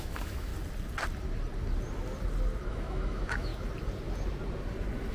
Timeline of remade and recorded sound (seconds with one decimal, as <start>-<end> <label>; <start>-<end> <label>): 0.0-0.5 remade; 0.5-2.7 recorded; 2.7-3.5 remade; 3.5-5.1 recorded